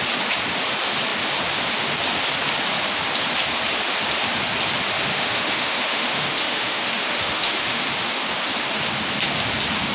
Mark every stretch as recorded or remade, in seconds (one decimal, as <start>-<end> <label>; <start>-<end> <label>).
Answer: 0.0-5.1 recorded; 5.1-7.8 remade; 7.8-9.9 recorded